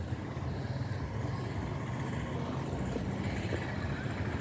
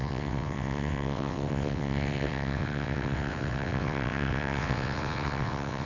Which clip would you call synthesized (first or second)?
second